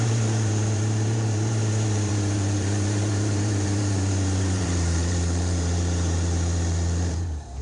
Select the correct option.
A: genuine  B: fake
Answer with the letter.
B